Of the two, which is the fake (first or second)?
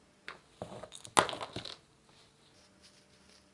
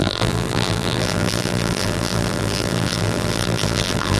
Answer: second